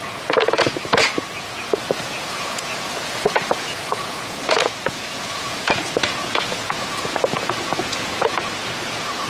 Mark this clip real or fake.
fake